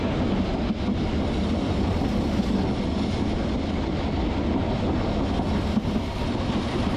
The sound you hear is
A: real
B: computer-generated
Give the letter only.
A